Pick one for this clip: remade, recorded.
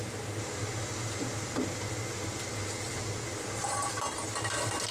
recorded